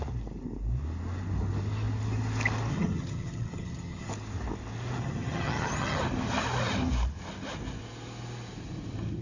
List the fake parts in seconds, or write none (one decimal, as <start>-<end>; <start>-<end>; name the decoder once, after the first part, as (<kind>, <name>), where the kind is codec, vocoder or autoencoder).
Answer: 2.7-4.1 (vocoder, HiFi-GAN); 5.0-6.0